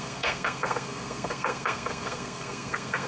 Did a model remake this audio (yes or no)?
yes